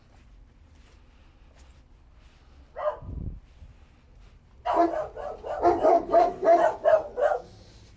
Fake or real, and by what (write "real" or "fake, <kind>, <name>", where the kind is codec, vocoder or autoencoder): real